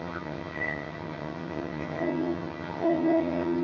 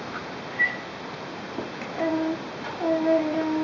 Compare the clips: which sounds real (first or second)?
second